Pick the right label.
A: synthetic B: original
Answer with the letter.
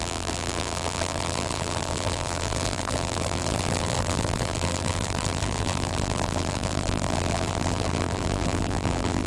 A